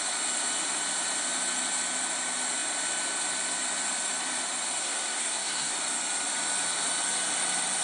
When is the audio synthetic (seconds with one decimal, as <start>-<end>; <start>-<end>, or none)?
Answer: 4.8-5.7

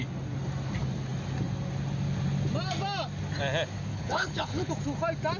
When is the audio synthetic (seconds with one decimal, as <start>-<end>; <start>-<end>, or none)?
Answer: 3.9-4.7

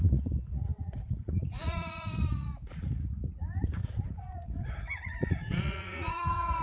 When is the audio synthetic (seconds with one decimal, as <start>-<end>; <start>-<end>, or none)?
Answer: 0.0-6.6

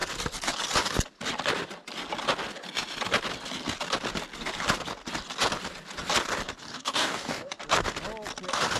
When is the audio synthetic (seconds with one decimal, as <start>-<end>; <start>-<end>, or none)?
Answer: 6.7-7.6